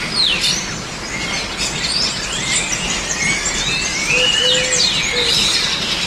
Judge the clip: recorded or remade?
recorded